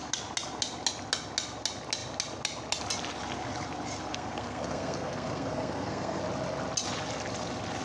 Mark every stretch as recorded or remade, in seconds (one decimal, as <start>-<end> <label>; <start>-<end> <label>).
0.0-4.1 recorded; 4.1-6.2 remade; 6.2-7.8 recorded